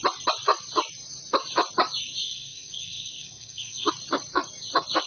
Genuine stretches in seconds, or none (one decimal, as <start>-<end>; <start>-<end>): 0.0-2.2; 3.9-5.1